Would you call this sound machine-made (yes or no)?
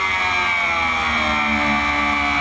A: no